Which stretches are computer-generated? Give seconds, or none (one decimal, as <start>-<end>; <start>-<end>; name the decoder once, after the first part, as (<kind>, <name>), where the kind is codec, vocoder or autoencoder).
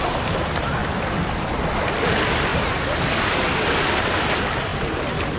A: 0.8-1.6 (vocoder, BigVGAN v2); 2.5-3.1; 4.7-5.4